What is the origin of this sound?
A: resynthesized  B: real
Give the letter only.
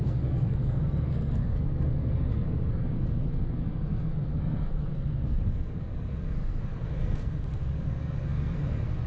A